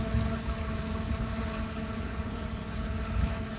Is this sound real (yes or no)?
no